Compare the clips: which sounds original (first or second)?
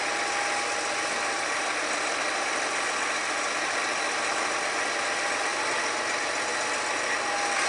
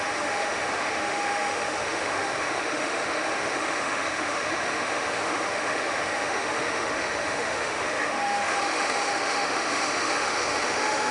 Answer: first